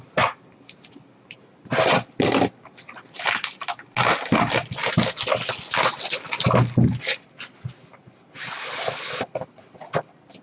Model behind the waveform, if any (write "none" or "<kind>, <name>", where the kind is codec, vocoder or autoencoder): none